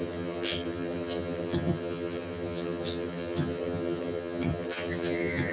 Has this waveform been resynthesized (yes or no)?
yes